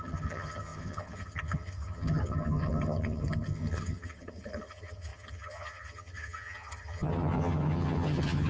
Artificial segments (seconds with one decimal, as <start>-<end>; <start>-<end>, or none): 0.0-8.5

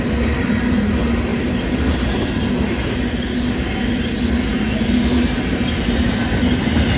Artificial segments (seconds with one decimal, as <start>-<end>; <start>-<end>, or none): none

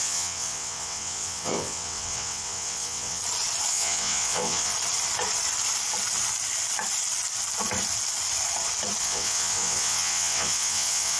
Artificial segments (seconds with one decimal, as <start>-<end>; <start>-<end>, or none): 0.0-3.2; 3.7-4.7; 9.0-11.2

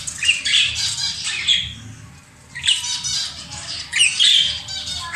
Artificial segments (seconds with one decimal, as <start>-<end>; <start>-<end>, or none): 0.0-1.5; 4.6-5.2

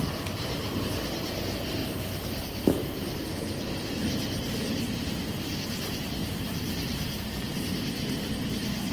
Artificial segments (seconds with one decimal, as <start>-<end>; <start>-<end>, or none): 1.8-3.3; 6.2-7.8